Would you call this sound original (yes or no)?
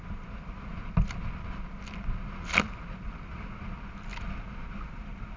yes